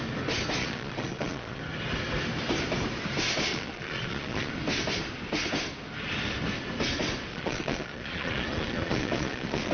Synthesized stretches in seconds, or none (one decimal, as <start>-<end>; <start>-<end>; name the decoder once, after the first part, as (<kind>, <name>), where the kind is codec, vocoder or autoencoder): 0.6-1.6 (vocoder, Vocos); 3.5-4.5; 7.3-9.7

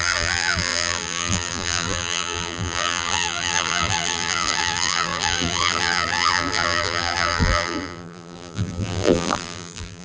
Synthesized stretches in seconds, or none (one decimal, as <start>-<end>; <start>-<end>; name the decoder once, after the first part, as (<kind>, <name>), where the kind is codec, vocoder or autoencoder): 0.0-10.0 (vocoder, BigVGAN v2)